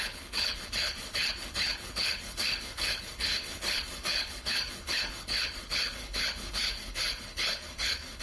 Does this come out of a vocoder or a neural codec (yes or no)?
yes